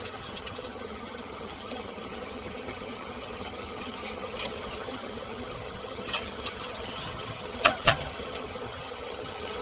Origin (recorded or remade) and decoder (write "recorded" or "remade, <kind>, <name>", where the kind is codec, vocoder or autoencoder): remade, vocoder, HiFi-GAN